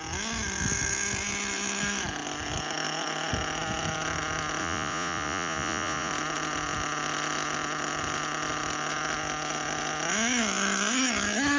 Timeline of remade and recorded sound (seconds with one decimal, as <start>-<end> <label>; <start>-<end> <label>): 0.0-4.6 recorded; 4.6-6.1 remade; 6.1-11.6 recorded